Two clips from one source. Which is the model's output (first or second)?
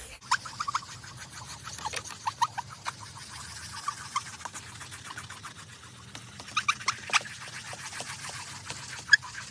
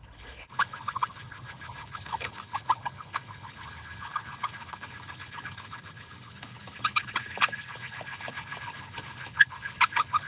second